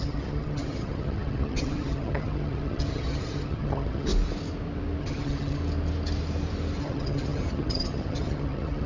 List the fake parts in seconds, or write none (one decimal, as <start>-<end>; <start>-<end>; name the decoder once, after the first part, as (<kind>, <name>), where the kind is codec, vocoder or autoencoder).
0.0-4.1 (vocoder, HiFi-GAN); 5.0-5.6; 6.8-8.9